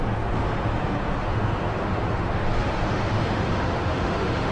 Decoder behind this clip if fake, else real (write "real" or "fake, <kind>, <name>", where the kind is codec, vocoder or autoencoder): fake, autoencoder, DAC-VAE